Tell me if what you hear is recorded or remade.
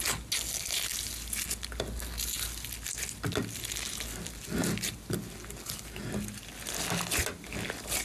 recorded